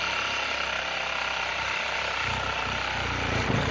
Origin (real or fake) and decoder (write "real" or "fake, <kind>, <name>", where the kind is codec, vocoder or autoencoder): real